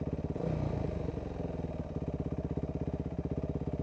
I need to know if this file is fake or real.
real